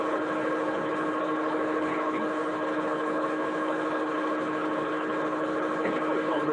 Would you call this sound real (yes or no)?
no